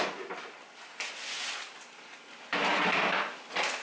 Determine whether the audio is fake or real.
real